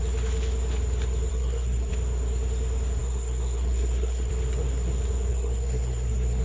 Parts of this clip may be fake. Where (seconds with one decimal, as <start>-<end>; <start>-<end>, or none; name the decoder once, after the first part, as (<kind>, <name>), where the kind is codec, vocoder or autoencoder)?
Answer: 1.3-1.9 (codec, SNAC); 3.0-4.3; 5.3-6.4